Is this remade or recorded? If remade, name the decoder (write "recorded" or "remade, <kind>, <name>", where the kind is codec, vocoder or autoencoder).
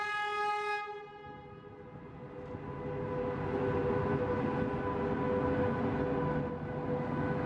recorded